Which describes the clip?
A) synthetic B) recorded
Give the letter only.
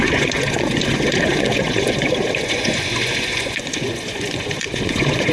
A